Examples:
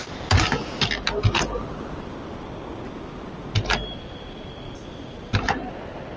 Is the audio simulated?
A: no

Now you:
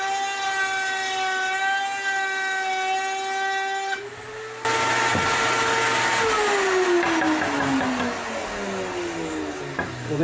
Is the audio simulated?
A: no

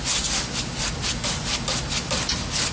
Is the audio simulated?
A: no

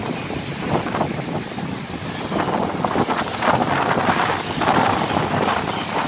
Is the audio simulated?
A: no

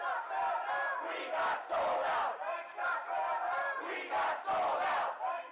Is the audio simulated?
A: no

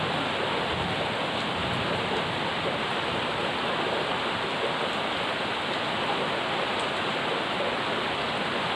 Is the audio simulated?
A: no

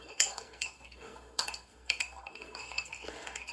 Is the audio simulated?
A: yes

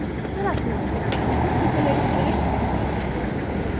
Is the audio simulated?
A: no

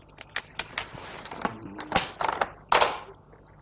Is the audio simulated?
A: no